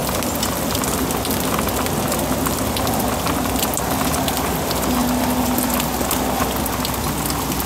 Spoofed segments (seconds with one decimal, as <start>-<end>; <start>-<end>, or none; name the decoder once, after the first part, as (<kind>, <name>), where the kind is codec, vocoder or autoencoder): 5.0-6.2 (vocoder, BigVGAN v2)